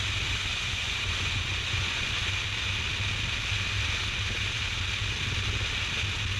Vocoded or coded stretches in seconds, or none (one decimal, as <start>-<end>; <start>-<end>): 0.5-2.1